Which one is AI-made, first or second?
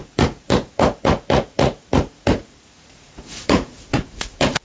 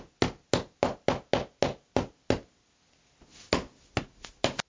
first